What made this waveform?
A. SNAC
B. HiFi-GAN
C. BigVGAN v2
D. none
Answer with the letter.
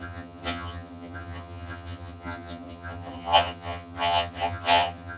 B